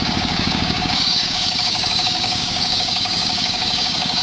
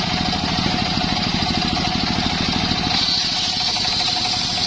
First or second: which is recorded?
second